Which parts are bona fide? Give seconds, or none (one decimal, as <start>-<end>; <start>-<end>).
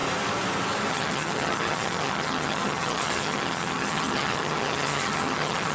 0.0-0.9